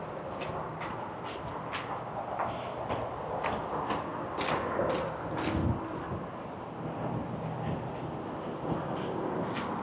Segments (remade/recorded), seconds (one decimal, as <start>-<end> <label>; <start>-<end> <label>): 0.0-9.8 recorded